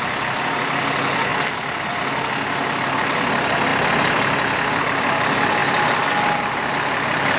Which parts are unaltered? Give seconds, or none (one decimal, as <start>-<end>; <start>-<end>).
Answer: 0.0-7.4